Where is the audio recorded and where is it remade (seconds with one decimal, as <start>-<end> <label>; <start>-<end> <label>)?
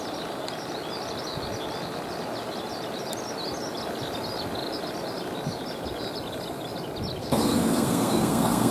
0.0-7.2 recorded; 7.2-8.7 remade